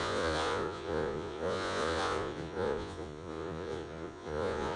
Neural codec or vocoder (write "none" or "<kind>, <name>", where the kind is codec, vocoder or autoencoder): vocoder, Vocos